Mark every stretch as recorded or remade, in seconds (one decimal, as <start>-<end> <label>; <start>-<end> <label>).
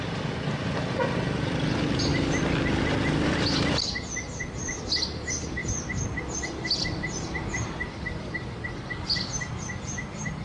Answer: 0.0-10.4 recorded